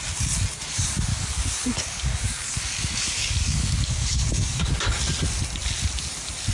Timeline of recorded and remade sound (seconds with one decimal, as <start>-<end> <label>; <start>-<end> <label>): 0.0-1.1 recorded; 1.1-5.0 remade; 5.0-6.5 recorded